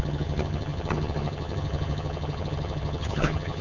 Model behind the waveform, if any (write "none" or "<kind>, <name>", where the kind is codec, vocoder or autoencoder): vocoder, HiFi-GAN